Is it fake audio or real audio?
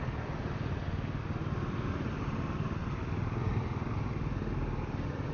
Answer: real